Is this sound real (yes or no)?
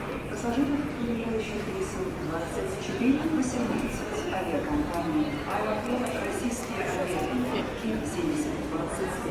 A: yes